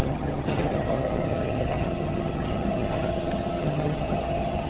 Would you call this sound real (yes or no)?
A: no